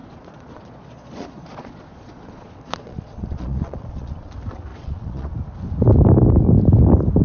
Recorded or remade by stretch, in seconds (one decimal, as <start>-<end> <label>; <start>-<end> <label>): 0.0-4.3 remade; 4.3-4.7 recorded; 4.7-5.3 remade; 5.3-7.2 recorded